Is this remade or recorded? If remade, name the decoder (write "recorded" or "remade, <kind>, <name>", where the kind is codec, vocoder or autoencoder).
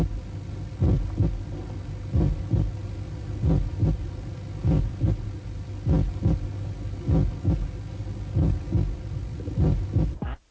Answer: recorded